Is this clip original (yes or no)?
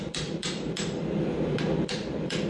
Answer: no